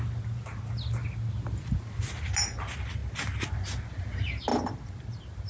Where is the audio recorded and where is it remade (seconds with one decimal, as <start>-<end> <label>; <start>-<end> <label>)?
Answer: 0.0-5.5 recorded